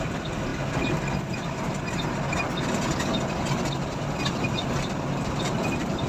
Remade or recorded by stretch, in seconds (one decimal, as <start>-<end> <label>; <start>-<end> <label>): 0.0-6.1 recorded